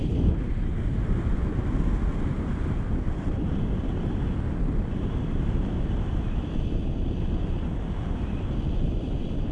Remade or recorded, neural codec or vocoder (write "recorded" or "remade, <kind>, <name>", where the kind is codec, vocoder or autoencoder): recorded